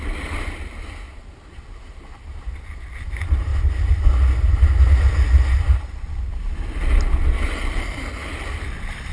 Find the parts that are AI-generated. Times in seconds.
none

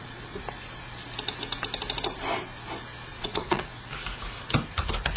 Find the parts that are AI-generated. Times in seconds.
3.1-3.6

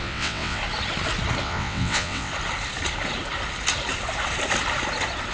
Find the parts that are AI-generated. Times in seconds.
0.0-0.6; 1.4-2.3

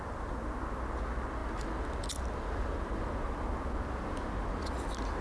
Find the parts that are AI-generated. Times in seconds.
none

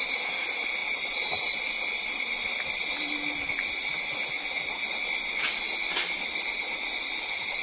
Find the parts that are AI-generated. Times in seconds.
none